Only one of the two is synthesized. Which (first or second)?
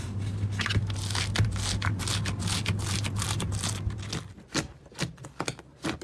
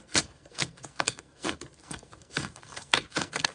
second